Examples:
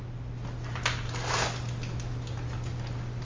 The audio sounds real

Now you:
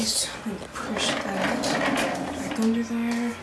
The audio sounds real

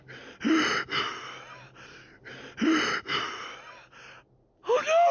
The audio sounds real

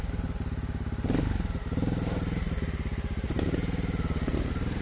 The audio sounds real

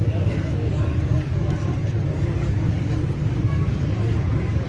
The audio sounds fake